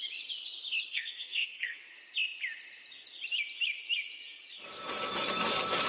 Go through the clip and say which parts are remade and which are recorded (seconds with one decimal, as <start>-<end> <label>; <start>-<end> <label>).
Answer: 0.0-0.9 recorded; 0.9-1.9 remade; 1.9-5.9 recorded